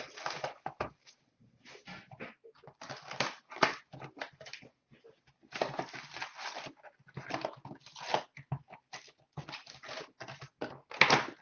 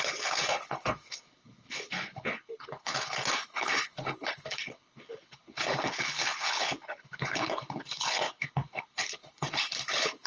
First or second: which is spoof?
second